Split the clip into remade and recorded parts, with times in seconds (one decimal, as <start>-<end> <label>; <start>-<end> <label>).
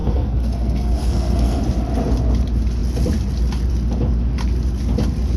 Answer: 0.0-1.6 remade; 1.6-5.4 recorded